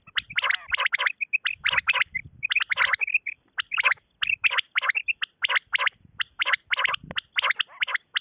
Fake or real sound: fake